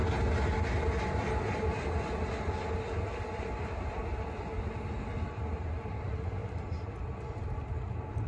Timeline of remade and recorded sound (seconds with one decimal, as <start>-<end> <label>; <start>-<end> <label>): 0.0-8.3 recorded